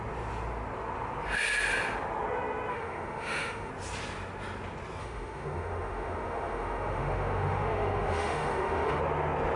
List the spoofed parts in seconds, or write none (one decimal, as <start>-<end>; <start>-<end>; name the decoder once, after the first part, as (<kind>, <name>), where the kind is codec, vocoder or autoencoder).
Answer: 2.7-3.7 (autoencoder, DAC-VAE); 5.0-9.0